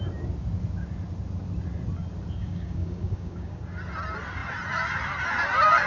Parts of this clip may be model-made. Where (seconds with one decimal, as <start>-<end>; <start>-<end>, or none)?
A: 2.4-3.6